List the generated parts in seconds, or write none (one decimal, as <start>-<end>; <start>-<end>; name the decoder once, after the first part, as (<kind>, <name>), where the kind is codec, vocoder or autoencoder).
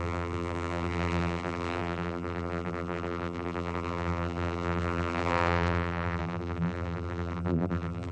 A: 0.0-8.1 (vocoder, BigVGAN v2)